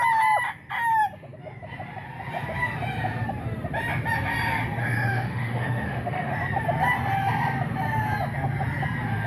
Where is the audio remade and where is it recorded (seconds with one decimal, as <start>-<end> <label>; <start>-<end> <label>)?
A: 0.0-4.8 recorded; 4.8-6.3 remade; 6.3-9.3 recorded